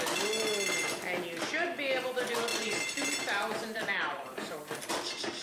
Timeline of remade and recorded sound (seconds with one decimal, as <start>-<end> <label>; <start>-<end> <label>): 0.0-2.5 recorded; 2.5-4.9 remade; 4.9-5.4 recorded